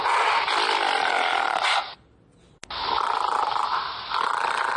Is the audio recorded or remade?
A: recorded